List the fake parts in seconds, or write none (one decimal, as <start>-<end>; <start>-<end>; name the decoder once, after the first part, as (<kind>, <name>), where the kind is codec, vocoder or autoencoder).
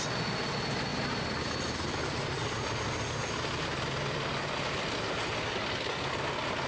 none